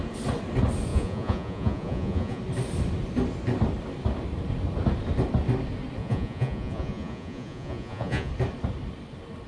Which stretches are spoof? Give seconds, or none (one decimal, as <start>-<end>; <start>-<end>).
0.9-2.4; 6.0-8.3